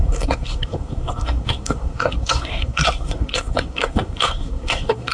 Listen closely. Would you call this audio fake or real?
fake